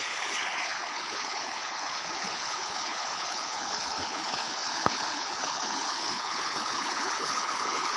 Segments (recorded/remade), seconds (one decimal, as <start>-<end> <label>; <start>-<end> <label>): 0.0-8.0 remade